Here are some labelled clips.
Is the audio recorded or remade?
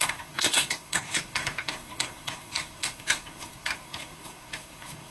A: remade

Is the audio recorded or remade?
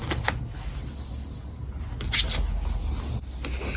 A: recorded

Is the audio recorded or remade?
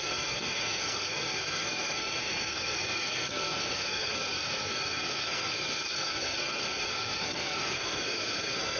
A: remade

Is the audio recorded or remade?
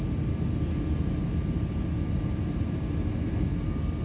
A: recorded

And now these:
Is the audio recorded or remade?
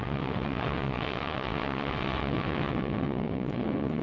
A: remade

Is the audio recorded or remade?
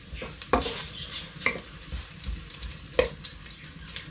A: recorded